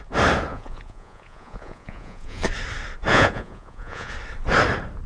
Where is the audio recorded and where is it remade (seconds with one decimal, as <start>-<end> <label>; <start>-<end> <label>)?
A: 0.0-0.5 recorded; 0.5-2.4 remade; 2.4-3.1 recorded; 3.1-4.1 remade; 4.1-5.1 recorded